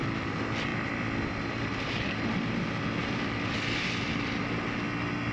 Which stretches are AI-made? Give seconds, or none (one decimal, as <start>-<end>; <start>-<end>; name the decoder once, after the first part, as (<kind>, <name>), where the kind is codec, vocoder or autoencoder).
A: 0.7-2.6 (vocoder, BigVGAN v2); 3.0-4.4